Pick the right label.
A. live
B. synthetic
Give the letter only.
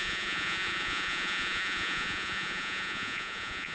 B